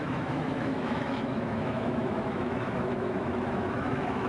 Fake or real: fake